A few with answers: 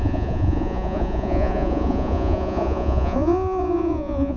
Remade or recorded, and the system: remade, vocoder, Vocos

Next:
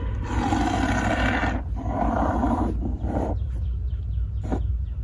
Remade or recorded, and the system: recorded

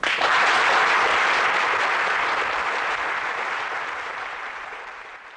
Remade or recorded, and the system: recorded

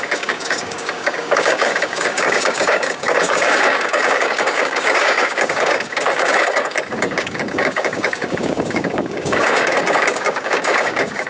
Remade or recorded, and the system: remade, codec, DAC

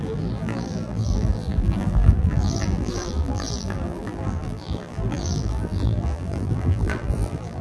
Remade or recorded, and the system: remade, vocoder, BigVGAN v2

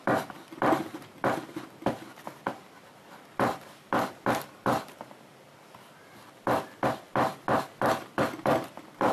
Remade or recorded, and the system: remade, vocoder, BigVGAN v2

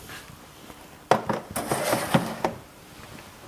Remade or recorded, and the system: recorded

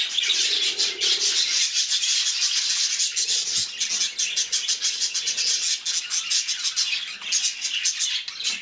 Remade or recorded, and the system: recorded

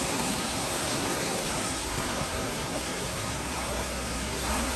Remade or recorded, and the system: remade, codec, SNAC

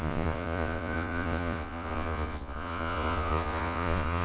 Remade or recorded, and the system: remade, vocoder, Vocos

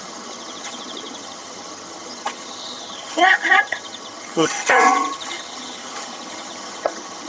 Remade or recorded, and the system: remade, vocoder, HiFi-GAN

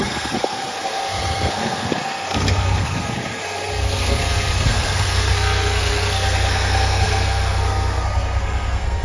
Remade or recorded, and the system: remade, codec, SNAC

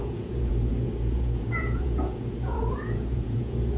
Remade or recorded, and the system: remade, vocoder, Vocos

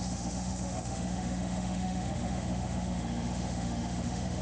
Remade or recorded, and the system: remade, autoencoder, DAC-VAE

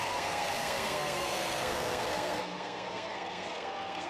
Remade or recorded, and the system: remade, codec, SNAC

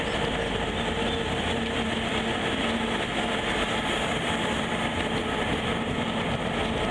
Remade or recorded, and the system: recorded